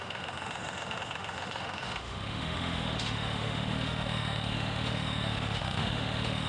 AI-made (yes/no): yes